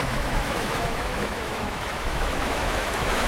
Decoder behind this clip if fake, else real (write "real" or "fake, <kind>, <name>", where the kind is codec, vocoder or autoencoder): fake, autoencoder, DAC-VAE